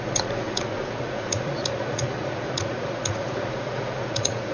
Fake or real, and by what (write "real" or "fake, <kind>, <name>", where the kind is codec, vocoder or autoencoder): fake, vocoder, Vocos